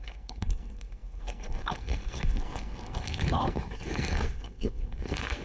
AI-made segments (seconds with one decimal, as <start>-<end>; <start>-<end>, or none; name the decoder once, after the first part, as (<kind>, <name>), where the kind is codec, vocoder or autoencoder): 0.0-5.4 (codec, SNAC)